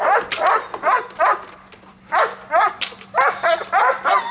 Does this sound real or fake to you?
real